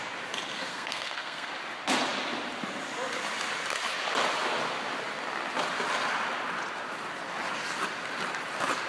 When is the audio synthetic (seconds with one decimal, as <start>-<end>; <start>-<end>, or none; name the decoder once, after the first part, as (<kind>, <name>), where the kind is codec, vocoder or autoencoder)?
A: 0.7-1.5 (codec, SNAC)